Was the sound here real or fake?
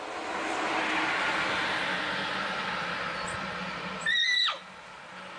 real